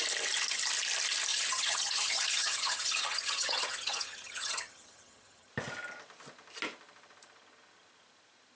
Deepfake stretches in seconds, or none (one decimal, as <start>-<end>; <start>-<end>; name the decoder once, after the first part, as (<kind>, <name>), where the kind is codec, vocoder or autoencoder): 1.3-5.5 (vocoder, HiFi-GAN)